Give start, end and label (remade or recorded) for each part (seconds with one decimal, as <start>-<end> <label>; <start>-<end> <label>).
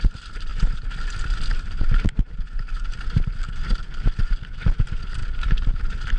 0.0-5.2 recorded; 5.2-5.8 remade; 5.8-6.2 recorded